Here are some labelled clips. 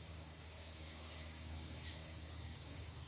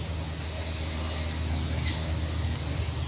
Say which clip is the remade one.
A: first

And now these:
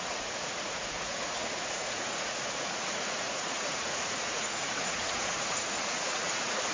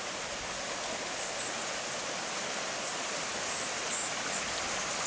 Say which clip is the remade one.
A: first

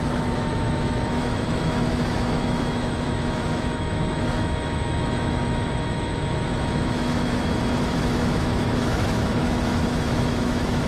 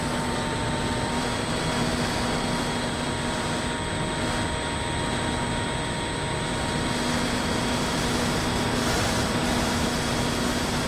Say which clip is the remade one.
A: first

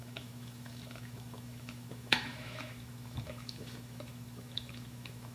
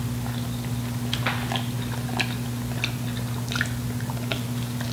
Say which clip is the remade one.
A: first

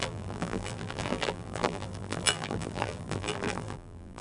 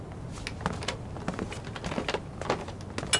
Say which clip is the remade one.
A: first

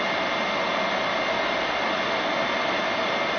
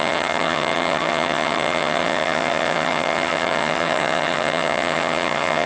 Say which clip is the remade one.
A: second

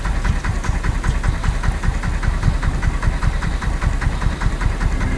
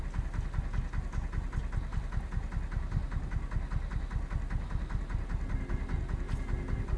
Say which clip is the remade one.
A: first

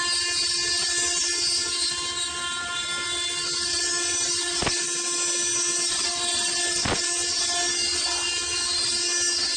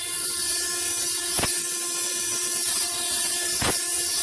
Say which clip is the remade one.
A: second